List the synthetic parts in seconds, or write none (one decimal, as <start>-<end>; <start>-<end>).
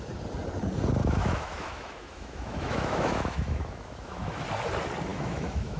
1.0-4.4; 5.1-5.8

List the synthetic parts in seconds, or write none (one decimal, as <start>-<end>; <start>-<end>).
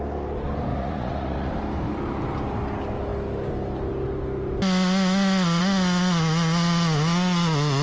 0.7-1.5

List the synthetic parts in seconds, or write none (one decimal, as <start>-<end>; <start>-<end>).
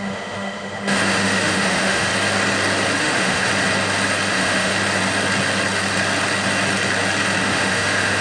0.0-2.1; 3.0-3.5; 4.3-4.7; 7.4-8.2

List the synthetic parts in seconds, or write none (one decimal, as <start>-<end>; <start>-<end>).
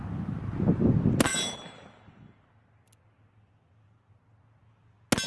none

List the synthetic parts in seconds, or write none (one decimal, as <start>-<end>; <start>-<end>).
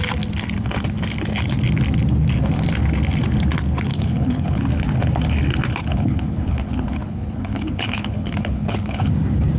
3.9-4.6; 5.8-9.1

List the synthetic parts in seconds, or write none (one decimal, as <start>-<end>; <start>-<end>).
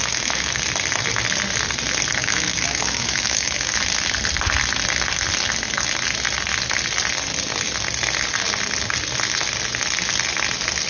0.0-0.6; 2.2-3.8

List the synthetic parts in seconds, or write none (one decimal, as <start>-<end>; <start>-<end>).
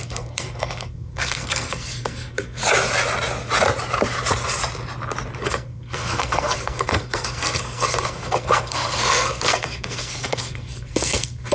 0.0-2.6; 5.4-11.5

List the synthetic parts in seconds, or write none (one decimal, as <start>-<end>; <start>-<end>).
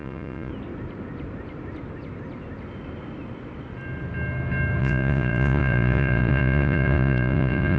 0.0-0.5; 4.8-7.8